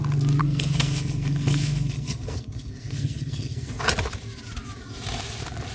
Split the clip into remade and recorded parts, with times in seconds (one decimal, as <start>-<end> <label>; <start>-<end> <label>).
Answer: 0.0-0.4 recorded; 0.4-3.8 remade; 3.8-5.7 recorded